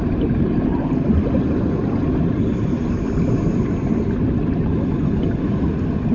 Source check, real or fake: real